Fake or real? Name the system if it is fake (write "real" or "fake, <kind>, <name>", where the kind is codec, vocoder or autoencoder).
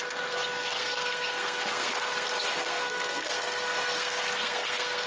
fake, codec, SNAC